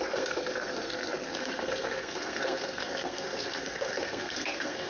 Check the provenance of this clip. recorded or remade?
remade